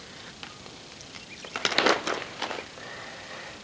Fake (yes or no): no